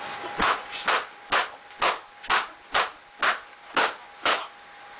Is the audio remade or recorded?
recorded